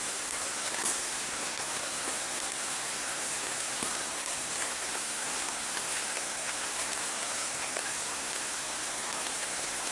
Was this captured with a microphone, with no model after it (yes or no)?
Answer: no